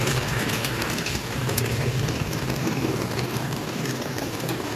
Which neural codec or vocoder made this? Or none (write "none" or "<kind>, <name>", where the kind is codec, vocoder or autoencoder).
codec, DAC